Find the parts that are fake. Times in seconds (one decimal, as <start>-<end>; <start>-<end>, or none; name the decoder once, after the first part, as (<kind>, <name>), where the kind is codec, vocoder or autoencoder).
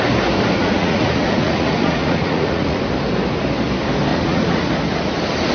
0.6-2.8 (vocoder, Vocos); 4.1-4.7